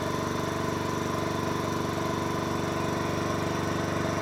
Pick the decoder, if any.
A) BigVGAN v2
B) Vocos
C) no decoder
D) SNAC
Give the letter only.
C